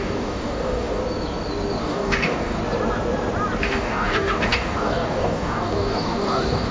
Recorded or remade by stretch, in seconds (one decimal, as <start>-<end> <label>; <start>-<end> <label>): 0.0-1.0 remade; 1.0-1.8 recorded; 1.8-2.6 remade; 2.6-3.6 recorded; 3.6-6.7 remade